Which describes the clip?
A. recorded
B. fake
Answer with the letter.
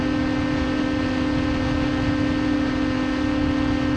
A